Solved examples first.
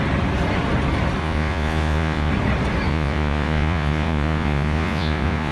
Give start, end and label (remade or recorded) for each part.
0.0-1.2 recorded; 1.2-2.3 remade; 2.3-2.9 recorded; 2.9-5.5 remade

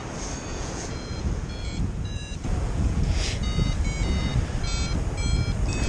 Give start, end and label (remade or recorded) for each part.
0.0-0.5 recorded; 0.5-3.8 remade; 3.8-5.9 recorded

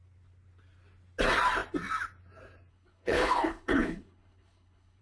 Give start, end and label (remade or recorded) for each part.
0.0-2.7 recorded; 2.7-5.0 remade

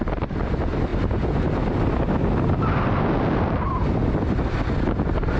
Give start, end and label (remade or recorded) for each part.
0.0-5.4 recorded